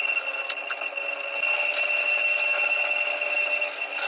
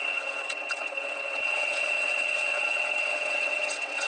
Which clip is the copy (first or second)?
second